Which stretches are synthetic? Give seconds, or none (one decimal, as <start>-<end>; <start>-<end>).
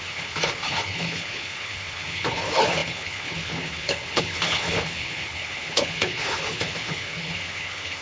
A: 0.0-8.0